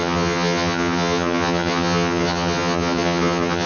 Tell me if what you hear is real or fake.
fake